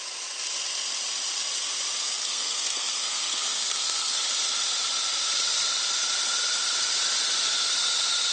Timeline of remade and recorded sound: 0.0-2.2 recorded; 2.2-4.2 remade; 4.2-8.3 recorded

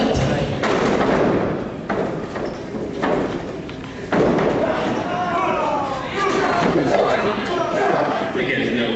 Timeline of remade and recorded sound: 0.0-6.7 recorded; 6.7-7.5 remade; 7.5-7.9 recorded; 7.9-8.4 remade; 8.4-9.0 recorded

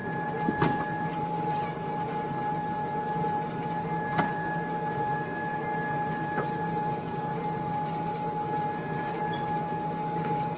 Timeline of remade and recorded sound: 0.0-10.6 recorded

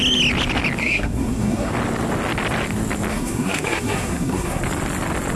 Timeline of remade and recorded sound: 0.0-0.8 recorded; 0.8-1.7 remade; 1.7-3.1 recorded; 3.1-4.6 remade; 4.6-5.4 recorded

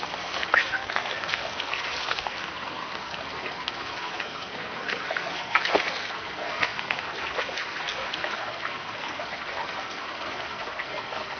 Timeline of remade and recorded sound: 0.0-11.4 remade